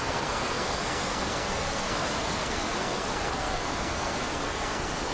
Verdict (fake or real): fake